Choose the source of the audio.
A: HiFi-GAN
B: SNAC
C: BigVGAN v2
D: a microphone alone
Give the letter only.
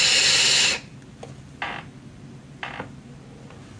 D